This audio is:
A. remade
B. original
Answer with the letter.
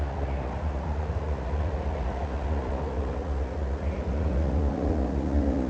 A